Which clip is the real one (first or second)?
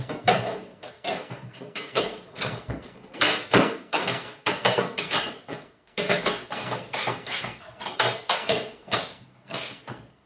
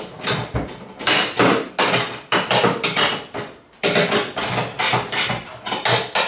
second